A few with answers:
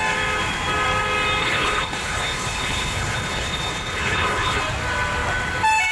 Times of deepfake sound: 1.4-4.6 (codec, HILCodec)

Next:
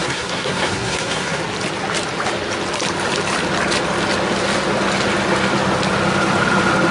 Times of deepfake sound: 0.0-1.4 (codec, SNAC)

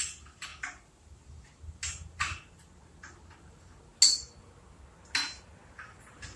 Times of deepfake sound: none

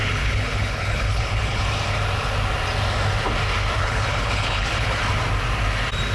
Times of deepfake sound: 0.0-1.6 (codec, HILCodec); 3.8-5.0

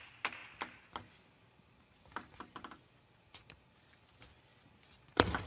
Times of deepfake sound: none